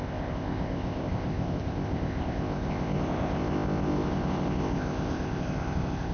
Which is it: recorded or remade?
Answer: remade